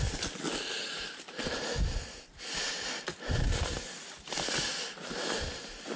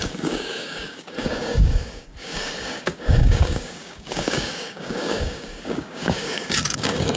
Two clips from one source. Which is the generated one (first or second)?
second